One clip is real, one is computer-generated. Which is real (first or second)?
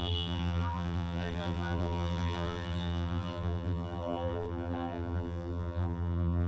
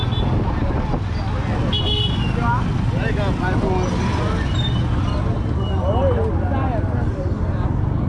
second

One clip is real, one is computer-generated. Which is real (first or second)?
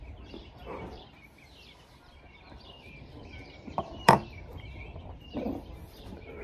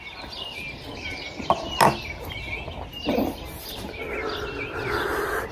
second